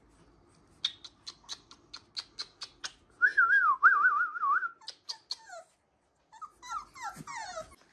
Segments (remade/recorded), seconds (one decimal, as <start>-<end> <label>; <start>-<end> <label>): 0.0-7.9 recorded